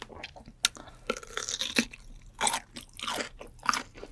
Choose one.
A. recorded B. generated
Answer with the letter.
A